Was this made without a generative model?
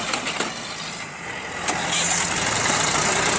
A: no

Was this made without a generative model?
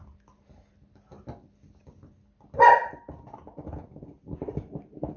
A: yes